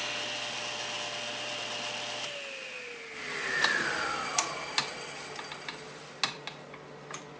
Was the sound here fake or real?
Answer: real